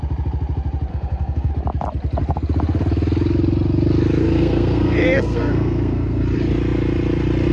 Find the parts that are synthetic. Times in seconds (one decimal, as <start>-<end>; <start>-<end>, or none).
0.9-1.5; 4.2-6.2